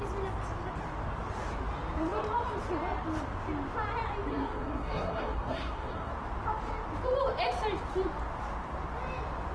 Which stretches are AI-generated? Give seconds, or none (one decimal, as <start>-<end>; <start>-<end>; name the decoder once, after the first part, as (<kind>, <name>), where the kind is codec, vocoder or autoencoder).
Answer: 4.3-6.1 (codec, SNAC)